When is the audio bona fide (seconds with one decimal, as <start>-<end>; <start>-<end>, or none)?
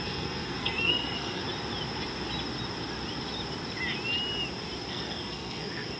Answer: 1.4-4.9